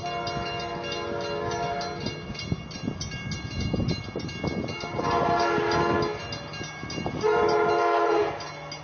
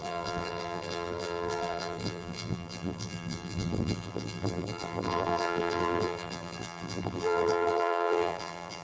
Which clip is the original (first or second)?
first